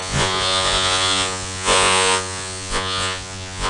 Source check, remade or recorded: remade